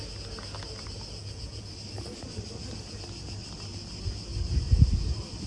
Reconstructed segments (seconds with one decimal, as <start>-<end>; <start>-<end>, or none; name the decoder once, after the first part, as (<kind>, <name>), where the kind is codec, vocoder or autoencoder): 1.2-1.7 (vocoder, Vocos)

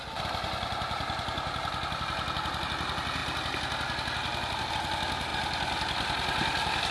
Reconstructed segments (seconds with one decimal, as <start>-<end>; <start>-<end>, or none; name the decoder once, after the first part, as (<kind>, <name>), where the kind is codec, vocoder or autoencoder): none

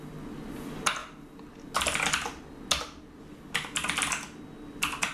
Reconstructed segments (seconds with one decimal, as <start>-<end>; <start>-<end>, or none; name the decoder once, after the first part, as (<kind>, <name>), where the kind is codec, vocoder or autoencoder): none

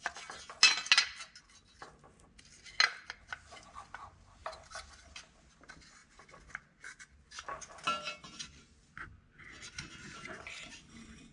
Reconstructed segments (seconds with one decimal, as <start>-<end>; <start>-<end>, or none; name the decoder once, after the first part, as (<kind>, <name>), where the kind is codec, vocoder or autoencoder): none

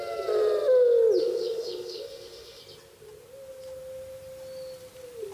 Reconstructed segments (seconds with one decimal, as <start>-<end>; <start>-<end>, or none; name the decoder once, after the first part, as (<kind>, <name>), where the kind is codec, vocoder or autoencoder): 1.2-2.6 (autoencoder, DAC-VAE)

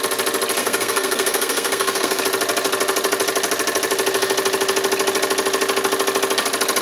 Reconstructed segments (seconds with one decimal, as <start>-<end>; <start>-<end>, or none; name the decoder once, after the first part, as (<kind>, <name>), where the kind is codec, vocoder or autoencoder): 0.6-2.2 (codec, SNAC)

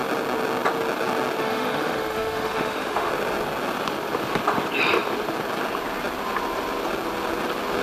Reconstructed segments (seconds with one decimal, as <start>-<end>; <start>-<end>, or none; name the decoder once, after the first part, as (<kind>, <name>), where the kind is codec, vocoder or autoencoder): 1.4-3.1 (autoencoder, DAC-VAE)